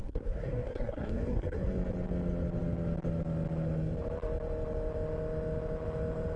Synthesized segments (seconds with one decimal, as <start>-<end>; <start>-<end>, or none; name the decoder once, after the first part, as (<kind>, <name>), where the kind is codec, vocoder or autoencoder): 0.0-1.7 (codec, SNAC)

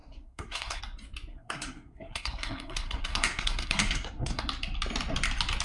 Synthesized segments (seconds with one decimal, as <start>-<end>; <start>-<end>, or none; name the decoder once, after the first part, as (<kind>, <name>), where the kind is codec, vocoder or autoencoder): 0.0-0.8 (codec, SNAC); 1.3-4.4